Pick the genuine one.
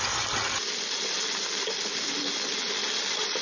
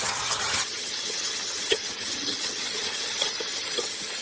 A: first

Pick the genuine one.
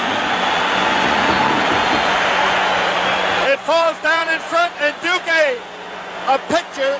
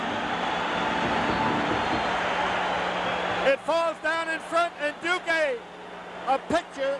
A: second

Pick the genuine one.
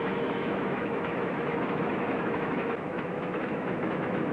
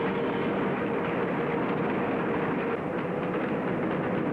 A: second